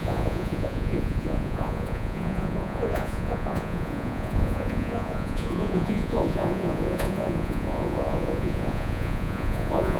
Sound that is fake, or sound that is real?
fake